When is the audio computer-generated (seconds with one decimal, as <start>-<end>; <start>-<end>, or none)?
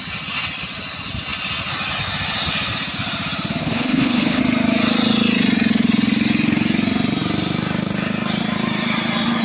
3.6-4.4